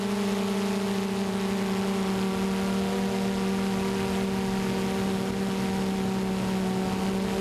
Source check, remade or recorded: recorded